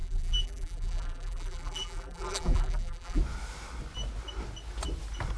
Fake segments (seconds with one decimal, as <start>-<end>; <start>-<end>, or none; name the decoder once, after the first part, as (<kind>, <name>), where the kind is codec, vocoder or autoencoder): 0.0-3.2 (vocoder, BigVGAN v2)

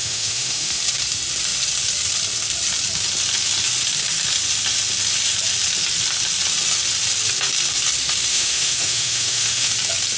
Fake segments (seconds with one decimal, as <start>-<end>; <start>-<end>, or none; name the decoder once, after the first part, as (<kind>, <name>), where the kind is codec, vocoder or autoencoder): 0.0-0.8 (autoencoder, DAC-VAE); 8.3-9.7

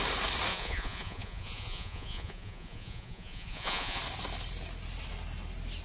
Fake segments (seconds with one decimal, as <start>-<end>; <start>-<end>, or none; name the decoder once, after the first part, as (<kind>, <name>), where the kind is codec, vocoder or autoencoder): 0.5-4.0 (vocoder, Vocos)